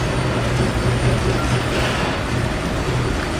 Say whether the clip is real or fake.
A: real